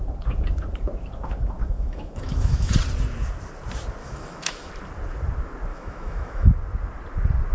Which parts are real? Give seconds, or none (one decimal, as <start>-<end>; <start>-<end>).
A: 0.0-1.6; 2.7-4.0; 4.7-5.7; 6.5-7.5